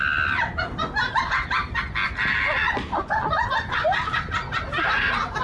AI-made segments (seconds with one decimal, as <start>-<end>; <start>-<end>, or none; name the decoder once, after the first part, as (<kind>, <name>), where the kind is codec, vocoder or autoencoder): none